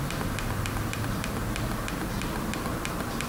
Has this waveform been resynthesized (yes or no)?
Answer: yes